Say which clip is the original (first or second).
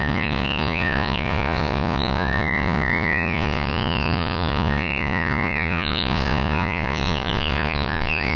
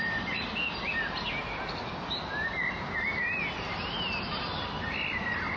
second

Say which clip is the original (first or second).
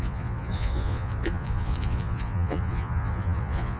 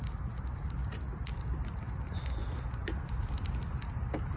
second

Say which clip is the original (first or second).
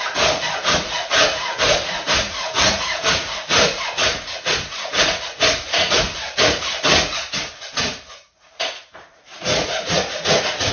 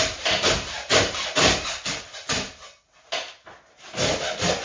second